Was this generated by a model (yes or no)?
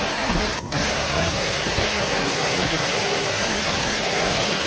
yes